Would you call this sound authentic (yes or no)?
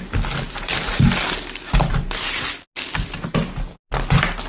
yes